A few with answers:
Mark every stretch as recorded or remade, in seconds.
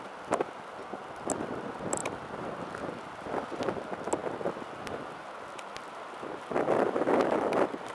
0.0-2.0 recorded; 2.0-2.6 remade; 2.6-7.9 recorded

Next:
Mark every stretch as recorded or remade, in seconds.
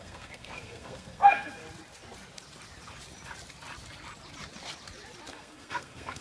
0.0-1.6 remade; 1.6-5.3 recorded; 5.3-6.2 remade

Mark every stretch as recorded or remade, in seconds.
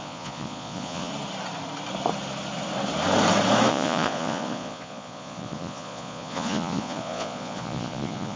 0.0-1.1 remade; 1.1-3.7 recorded; 3.7-8.4 remade